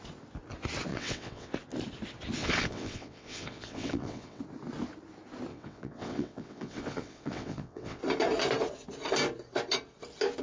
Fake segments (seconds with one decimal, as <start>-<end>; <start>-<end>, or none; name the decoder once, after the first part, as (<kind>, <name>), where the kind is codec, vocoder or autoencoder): 0.9-1.5 (vocoder, WaveNeXt); 2.4-4.4; 5.5-8.0